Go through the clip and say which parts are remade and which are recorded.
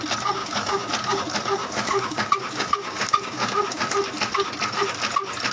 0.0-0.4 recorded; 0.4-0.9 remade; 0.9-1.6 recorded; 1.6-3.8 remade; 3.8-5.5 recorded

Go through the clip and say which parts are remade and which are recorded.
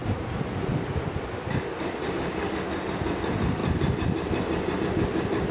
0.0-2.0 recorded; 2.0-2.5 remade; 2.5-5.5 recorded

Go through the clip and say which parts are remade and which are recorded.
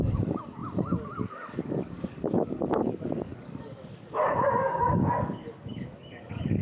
0.0-6.6 remade